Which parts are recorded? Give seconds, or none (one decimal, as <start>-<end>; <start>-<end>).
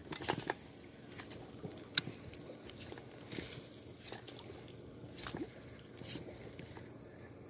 0.0-7.5